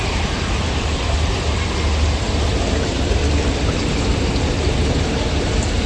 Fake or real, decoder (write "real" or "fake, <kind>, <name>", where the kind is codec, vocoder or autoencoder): real